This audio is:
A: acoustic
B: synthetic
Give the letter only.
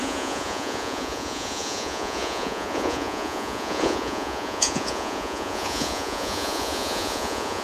B